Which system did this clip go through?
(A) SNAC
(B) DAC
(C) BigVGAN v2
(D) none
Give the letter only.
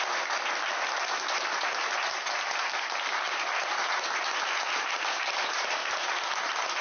D